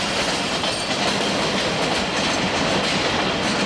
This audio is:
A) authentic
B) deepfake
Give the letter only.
A